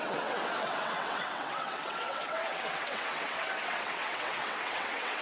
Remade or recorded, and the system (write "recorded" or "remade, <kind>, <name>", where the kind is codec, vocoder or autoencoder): remade, vocoder, WaveNeXt